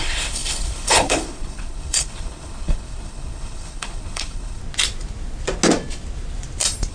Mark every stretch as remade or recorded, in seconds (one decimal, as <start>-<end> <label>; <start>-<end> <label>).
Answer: 0.0-4.6 remade; 4.6-6.9 recorded